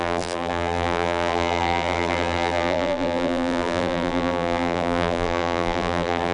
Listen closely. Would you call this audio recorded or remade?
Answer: remade